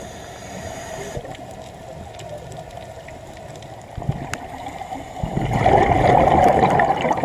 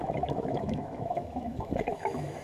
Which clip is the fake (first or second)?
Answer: second